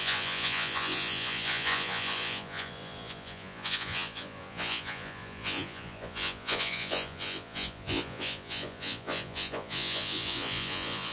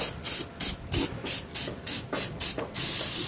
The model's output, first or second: first